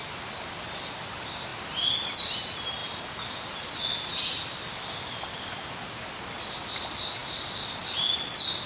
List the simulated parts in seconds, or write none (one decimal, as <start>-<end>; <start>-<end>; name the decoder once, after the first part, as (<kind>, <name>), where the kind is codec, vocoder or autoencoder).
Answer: none